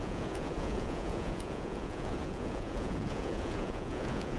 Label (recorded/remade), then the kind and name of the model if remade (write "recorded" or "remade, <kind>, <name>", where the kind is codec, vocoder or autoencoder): remade, vocoder, Vocos